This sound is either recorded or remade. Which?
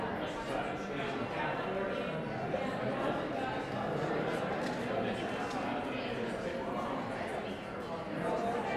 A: recorded